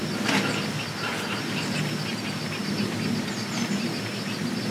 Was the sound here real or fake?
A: real